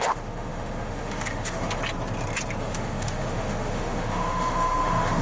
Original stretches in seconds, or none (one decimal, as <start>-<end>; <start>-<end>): 1.8-2.6